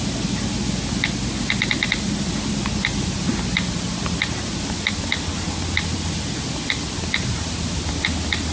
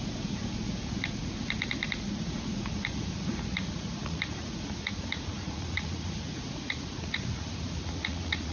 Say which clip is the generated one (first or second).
second